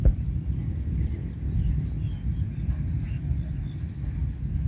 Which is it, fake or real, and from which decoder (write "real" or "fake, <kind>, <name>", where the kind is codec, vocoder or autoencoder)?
real